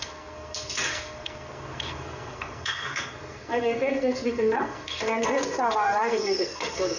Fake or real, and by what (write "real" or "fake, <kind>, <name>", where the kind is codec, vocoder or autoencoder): fake, codec, SNAC